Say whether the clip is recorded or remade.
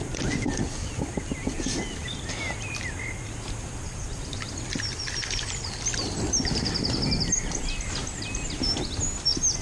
recorded